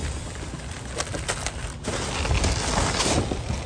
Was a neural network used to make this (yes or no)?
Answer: no